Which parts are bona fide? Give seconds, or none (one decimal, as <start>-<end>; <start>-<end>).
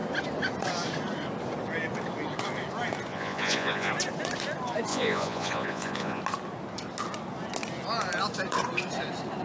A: 0.0-3.1; 3.9-4.9; 6.2-9.4